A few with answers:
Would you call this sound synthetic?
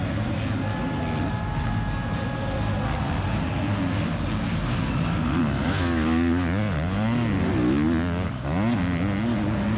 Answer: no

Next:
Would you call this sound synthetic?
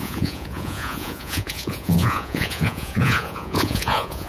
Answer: yes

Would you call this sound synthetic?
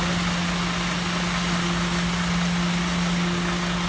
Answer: no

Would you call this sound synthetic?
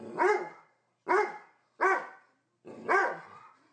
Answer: no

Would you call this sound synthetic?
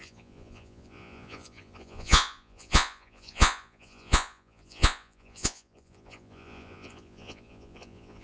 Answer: yes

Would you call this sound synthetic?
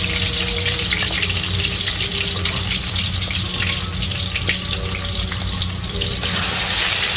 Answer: no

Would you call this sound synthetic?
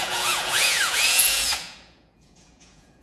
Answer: yes